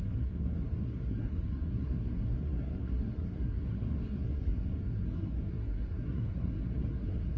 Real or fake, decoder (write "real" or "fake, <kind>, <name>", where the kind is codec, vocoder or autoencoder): fake, codec, SNAC